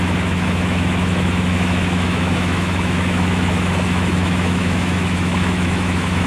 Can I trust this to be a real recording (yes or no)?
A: no